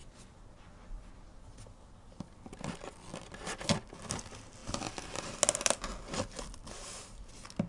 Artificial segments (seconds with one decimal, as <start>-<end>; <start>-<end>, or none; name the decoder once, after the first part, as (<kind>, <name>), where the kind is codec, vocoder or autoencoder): none

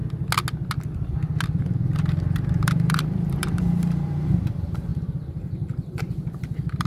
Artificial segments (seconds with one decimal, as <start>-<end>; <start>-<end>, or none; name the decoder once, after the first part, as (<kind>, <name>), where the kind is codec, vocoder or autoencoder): 2.6-6.9 (vocoder, BigVGAN v2)

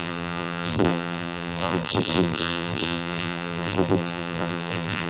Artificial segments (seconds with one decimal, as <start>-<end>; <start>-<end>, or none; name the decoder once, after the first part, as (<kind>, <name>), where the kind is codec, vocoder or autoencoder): 0.0-5.1 (vocoder, BigVGAN v2)

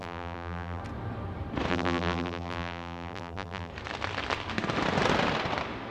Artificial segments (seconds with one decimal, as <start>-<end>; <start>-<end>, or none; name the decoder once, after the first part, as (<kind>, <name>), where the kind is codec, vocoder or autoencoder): 0.0-0.8 (vocoder, BigVGAN v2); 1.7-3.7

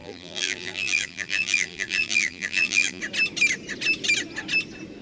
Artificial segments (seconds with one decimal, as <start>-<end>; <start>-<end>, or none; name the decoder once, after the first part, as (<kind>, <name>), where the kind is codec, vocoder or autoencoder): 0.0-3.0 (vocoder, BigVGAN v2)